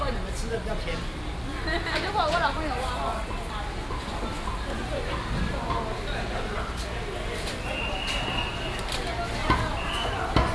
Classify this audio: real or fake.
real